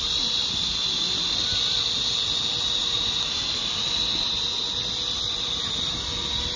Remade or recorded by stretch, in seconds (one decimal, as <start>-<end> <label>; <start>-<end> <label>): 0.0-2.8 recorded; 2.8-3.4 remade; 3.4-6.6 recorded